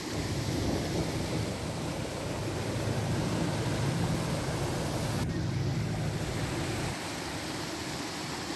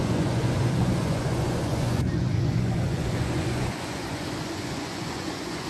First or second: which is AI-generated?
second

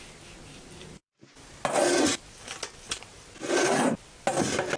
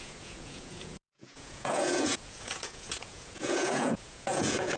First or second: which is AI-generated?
second